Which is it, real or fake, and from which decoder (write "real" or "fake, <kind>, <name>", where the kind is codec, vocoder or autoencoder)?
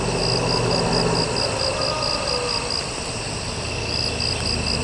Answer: real